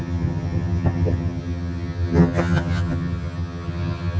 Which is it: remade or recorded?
remade